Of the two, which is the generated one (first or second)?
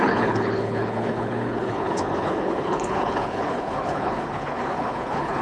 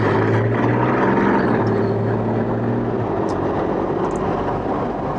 first